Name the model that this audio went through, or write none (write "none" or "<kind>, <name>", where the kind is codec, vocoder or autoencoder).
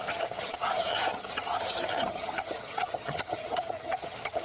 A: vocoder, HiFi-GAN